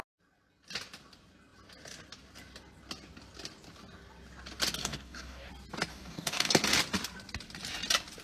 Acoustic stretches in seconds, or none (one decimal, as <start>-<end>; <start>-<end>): 0.0-4.8; 5.5-5.9; 6.5-8.2